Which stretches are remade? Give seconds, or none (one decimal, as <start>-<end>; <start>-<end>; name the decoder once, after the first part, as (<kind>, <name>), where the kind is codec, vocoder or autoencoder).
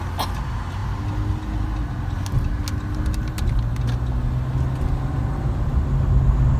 none